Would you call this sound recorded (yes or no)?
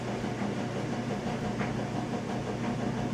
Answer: yes